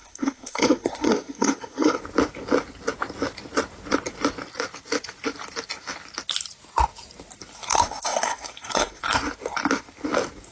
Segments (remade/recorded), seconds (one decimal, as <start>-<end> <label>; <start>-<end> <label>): 0.0-2.0 remade; 2.0-7.7 recorded; 7.7-9.0 remade; 9.0-10.5 recorded